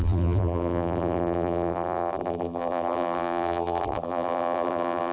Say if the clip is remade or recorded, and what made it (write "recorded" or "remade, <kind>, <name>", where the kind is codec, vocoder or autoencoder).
remade, vocoder, BigVGAN v2